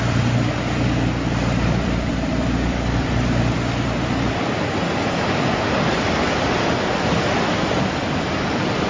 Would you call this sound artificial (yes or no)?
yes